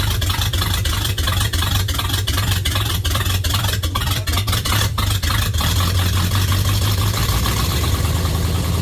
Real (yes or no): no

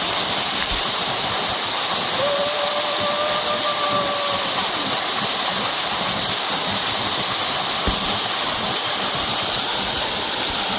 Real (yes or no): no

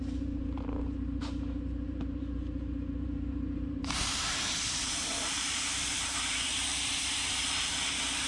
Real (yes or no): no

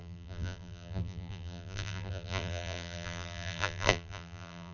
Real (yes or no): no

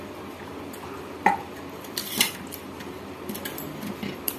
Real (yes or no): no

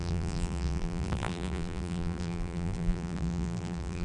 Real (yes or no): no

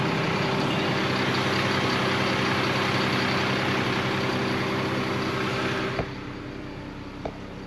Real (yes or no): yes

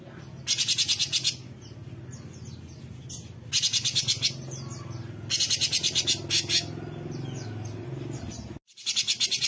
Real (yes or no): yes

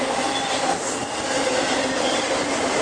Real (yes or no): no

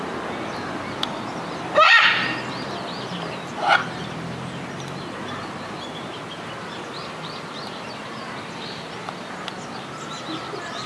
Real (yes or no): yes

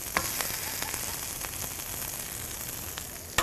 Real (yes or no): yes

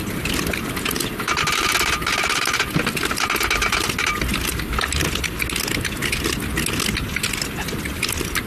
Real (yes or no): yes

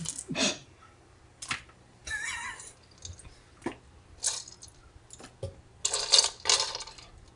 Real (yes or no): yes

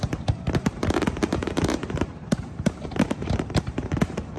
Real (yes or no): no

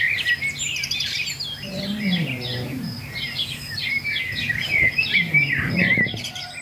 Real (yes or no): no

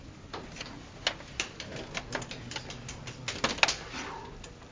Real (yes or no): yes